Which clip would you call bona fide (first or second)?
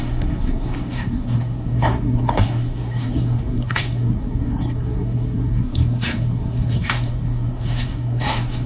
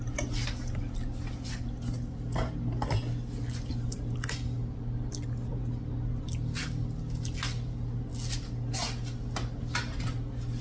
second